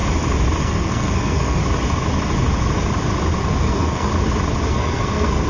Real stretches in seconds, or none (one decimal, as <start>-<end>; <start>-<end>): 0.0-0.6; 1.6-3.4; 4.1-4.7